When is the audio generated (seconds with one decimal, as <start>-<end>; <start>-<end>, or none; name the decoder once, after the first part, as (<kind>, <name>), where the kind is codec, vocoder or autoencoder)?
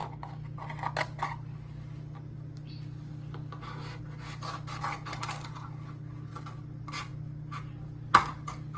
none